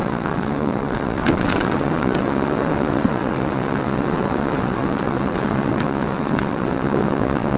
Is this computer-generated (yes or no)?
yes